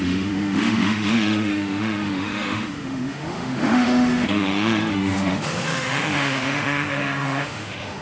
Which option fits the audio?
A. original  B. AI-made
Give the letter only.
B